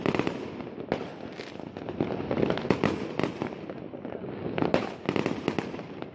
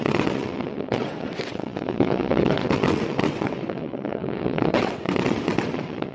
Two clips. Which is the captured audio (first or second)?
first